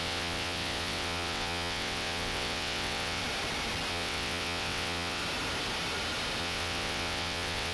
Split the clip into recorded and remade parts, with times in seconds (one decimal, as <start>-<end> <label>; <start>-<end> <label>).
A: 0.0-3.2 remade; 3.2-3.9 recorded; 3.9-5.2 remade; 5.2-6.4 recorded; 6.4-7.7 remade